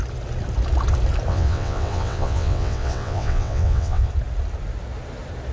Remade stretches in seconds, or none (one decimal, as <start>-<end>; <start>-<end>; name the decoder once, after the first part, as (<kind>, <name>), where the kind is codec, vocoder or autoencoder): 1.3-4.1 (vocoder, WaveNeXt)